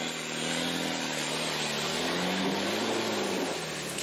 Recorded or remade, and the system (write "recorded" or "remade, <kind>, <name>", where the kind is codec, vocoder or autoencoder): recorded